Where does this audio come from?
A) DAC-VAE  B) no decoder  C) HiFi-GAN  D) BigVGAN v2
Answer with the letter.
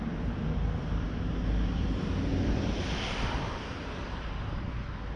D